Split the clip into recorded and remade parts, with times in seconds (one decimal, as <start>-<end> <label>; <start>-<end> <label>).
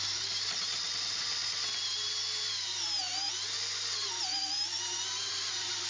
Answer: 0.0-5.9 recorded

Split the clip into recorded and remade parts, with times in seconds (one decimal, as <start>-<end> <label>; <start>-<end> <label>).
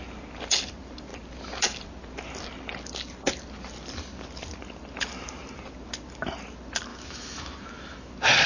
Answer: 0.0-6.9 recorded; 6.9-8.1 remade; 8.1-8.5 recorded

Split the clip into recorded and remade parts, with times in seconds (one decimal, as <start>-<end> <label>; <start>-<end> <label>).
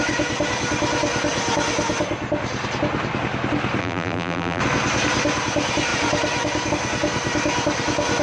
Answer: 0.0-3.8 recorded; 3.8-4.6 remade; 4.6-8.2 recorded